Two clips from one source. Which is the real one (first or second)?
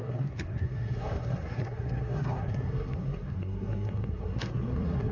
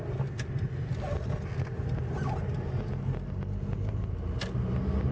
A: second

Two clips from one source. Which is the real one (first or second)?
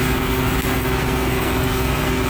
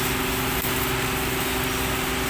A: second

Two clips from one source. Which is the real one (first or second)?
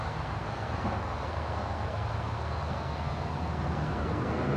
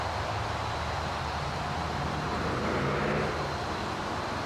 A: second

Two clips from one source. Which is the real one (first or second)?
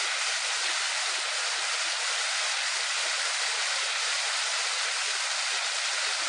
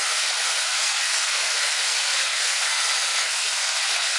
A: first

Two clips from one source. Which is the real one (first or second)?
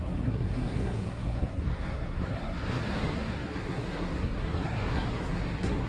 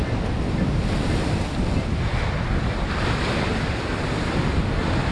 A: second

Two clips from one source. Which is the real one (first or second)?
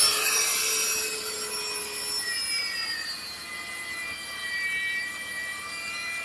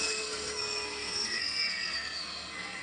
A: first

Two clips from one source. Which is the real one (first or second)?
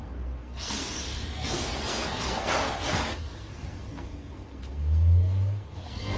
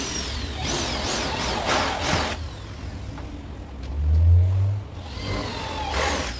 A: second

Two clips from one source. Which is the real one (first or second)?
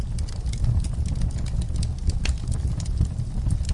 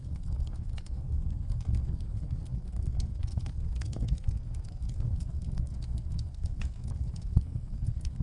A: first